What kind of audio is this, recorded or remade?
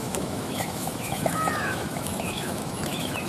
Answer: remade